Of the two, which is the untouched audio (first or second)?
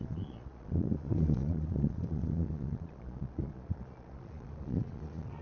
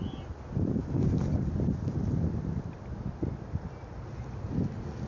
second